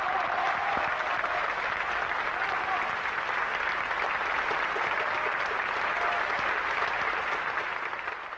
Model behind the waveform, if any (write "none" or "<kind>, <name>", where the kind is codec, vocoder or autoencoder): none